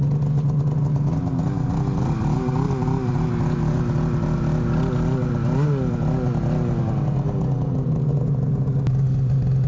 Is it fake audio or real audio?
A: real